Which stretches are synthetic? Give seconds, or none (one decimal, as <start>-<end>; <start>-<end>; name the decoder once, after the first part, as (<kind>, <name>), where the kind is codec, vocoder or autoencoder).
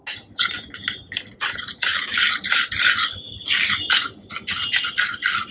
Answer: none